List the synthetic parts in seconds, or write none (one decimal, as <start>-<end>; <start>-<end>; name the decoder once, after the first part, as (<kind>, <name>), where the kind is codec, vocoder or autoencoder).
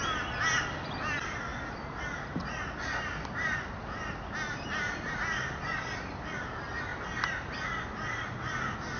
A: none